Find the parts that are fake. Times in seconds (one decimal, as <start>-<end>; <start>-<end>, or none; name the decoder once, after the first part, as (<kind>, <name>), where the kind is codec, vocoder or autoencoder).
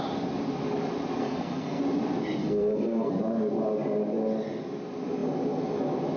1.2-1.8 (codec, SNAC); 2.4-3.1